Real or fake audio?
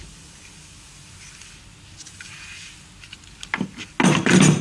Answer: real